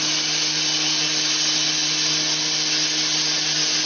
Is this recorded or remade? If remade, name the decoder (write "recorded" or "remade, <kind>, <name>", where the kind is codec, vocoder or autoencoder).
recorded